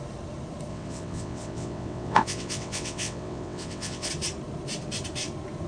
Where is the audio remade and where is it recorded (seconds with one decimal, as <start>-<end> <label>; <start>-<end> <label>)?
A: 0.0-0.7 recorded; 0.7-4.1 remade; 4.1-5.7 recorded